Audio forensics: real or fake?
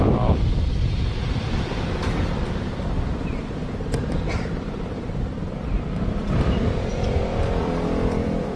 fake